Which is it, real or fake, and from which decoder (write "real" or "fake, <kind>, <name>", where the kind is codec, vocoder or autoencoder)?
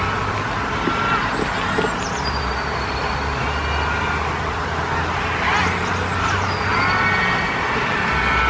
real